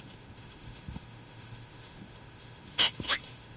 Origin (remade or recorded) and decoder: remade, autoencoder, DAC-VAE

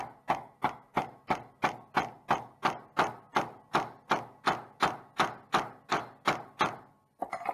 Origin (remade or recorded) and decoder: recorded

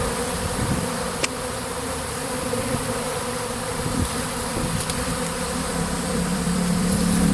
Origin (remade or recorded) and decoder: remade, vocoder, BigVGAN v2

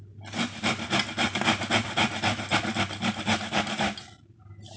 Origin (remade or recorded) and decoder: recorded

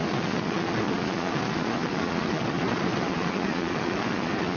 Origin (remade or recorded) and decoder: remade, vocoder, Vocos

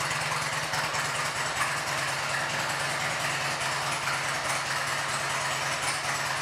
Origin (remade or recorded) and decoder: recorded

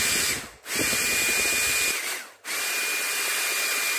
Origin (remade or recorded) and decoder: recorded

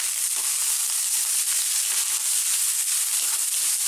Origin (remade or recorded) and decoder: recorded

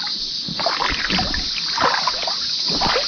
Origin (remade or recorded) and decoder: recorded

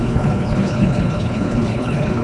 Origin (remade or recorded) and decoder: remade, codec, HILCodec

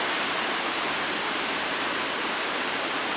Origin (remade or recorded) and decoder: remade, vocoder, BigVGAN v2